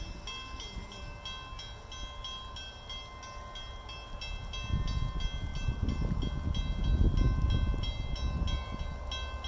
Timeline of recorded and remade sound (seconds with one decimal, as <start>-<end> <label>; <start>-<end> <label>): 0.0-9.5 recorded